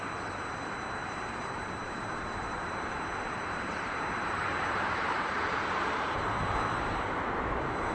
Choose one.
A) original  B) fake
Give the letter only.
B